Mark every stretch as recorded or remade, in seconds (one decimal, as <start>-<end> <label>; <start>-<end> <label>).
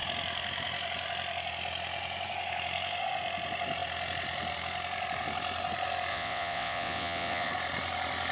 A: 0.0-6.1 recorded; 6.1-7.5 remade; 7.5-8.3 recorded